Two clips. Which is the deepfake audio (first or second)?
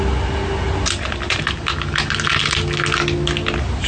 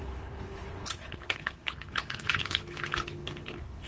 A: second